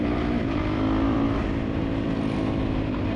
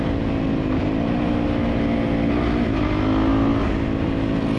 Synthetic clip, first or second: first